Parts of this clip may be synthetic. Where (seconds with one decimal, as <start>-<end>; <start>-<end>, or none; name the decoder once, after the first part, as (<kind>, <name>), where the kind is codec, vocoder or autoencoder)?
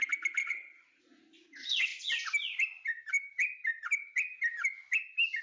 0.4-1.0 (vocoder, HiFi-GAN)